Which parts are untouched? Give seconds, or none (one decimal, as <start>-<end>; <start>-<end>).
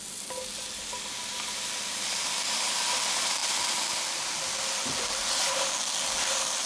0.0-6.7